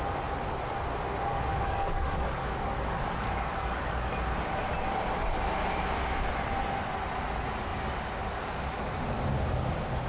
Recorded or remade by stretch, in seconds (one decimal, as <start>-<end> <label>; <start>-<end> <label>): 0.0-1.3 recorded; 1.3-4.1 remade; 4.1-10.1 recorded